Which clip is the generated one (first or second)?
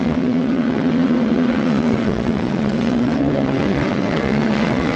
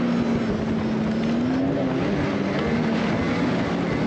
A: first